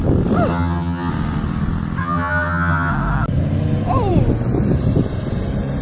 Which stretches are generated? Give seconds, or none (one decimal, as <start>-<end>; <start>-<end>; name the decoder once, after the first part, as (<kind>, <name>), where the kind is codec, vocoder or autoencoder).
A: 0.5-1.1 (vocoder, HiFi-GAN); 2.0-2.9